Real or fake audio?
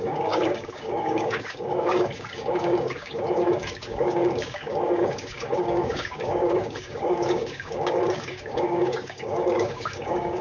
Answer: fake